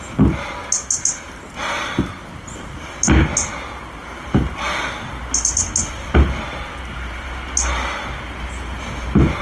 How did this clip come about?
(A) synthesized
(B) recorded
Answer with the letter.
B